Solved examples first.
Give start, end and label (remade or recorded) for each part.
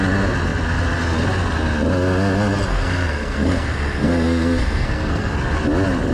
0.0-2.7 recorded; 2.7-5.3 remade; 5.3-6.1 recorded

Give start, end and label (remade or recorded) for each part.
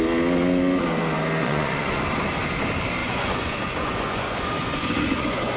0.0-1.4 recorded; 1.4-2.0 remade; 2.0-3.0 recorded; 3.0-5.6 remade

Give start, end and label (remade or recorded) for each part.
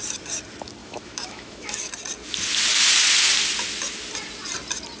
0.0-0.8 recorded; 0.8-1.9 remade; 1.9-5.0 recorded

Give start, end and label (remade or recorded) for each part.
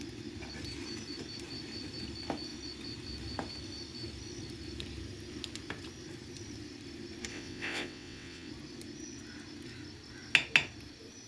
0.0-7.3 recorded; 7.3-8.5 remade; 8.5-11.3 recorded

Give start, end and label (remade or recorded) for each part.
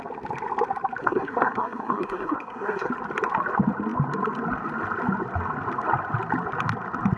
0.0-1.0 recorded; 1.0-2.9 remade; 2.9-7.2 recorded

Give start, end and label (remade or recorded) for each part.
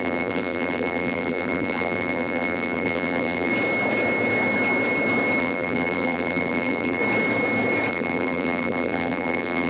0.0-3.5 remade; 3.5-5.4 recorded; 5.4-7.0 remade; 7.0-7.9 recorded; 7.9-9.7 remade